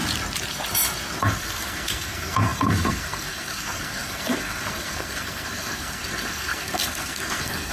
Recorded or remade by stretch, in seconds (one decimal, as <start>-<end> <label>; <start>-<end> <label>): 0.0-1.2 recorded; 1.2-7.7 remade